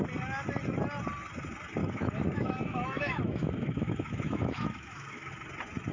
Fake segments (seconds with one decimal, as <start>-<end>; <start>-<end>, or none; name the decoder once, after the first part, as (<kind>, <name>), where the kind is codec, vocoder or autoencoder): 1.8-5.3 (autoencoder, DAC-VAE)